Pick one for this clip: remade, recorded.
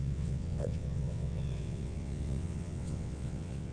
remade